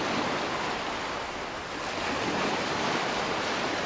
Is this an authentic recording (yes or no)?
yes